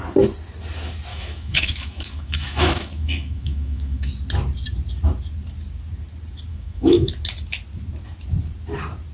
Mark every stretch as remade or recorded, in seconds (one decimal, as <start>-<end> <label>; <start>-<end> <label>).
0.0-1.1 recorded; 1.1-4.1 remade; 4.1-6.5 recorded; 6.5-7.1 remade; 7.1-9.1 recorded